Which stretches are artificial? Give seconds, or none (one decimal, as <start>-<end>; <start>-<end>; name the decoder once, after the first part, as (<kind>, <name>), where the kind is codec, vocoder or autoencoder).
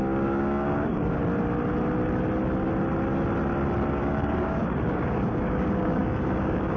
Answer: 0.0-1.2 (codec, DAC); 3.9-6.8